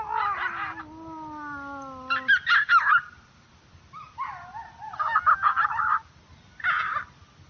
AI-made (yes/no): no